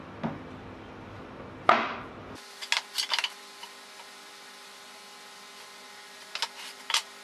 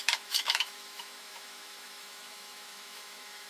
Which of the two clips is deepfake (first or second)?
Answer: second